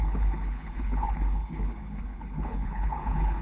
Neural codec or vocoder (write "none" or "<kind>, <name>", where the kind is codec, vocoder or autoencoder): codec, HILCodec